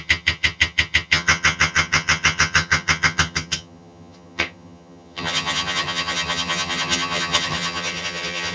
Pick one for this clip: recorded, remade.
remade